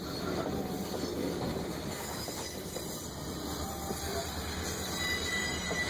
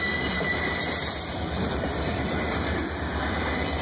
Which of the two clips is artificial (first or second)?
second